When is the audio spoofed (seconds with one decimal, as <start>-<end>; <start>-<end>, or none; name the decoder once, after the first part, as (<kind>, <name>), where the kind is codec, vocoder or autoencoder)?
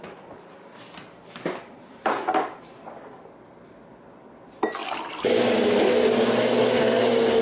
none